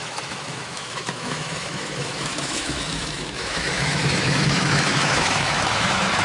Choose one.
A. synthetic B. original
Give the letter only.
A